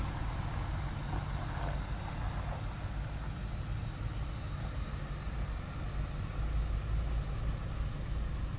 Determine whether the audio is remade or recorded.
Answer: recorded